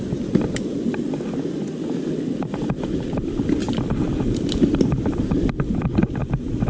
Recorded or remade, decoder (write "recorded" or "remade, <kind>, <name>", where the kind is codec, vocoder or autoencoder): recorded